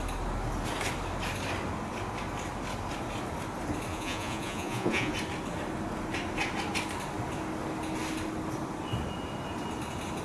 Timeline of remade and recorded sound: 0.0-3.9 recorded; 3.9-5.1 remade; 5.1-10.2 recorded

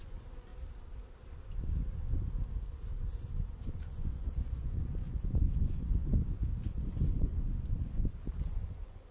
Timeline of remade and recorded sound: 0.0-0.5 remade; 0.5-3.8 recorded; 3.8-9.1 remade

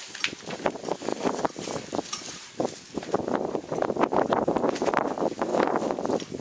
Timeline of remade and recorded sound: 0.0-5.5 recorded; 5.5-6.4 remade

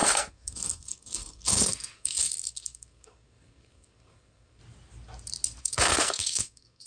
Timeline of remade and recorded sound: 0.0-4.6 remade; 4.6-5.6 recorded; 5.6-6.9 remade